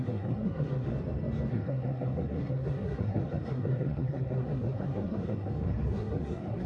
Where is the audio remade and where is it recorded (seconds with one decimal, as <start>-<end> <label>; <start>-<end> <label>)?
0.0-0.9 remade; 0.9-1.5 recorded; 1.5-6.7 remade